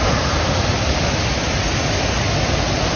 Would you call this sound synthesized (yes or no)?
no